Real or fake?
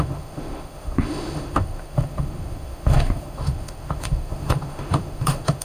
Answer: fake